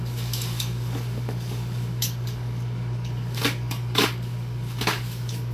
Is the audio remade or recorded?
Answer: remade